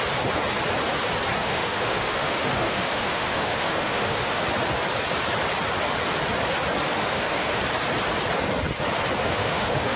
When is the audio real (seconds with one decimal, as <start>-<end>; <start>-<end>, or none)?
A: 0.0-1.4; 4.4-7.0; 7.6-9.2